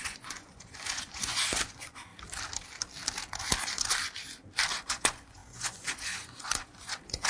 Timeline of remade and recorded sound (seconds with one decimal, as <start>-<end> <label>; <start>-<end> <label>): 0.0-2.1 remade; 2.1-4.7 recorded; 4.7-7.3 remade